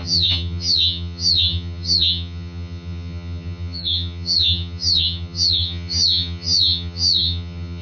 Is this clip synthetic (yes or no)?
yes